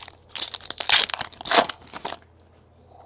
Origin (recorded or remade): recorded